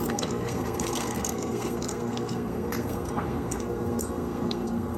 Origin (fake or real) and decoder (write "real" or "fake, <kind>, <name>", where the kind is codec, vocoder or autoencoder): fake, codec, SNAC